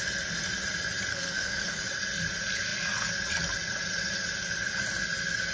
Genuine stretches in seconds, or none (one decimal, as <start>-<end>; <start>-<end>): 0.0-1.1; 1.8-5.5